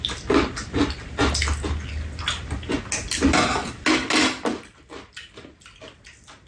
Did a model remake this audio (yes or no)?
no